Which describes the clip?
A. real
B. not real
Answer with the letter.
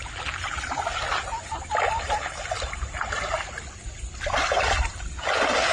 A